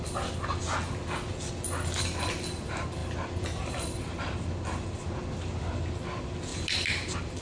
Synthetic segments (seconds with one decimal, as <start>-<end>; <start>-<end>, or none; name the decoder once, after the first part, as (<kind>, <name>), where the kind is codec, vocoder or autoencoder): 3.0-5.2 (vocoder, BigVGAN v2); 6.5-7.4